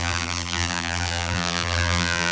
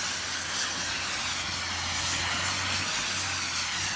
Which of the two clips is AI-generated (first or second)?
first